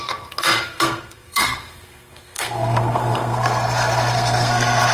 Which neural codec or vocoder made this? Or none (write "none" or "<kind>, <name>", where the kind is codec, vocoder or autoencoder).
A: codec, SNAC